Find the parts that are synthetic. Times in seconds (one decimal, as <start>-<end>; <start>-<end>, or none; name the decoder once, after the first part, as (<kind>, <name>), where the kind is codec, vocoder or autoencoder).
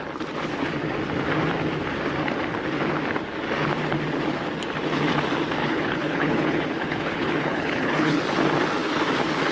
5.6-8.2 (codec, HILCodec)